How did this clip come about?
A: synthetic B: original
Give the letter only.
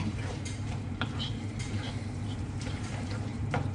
A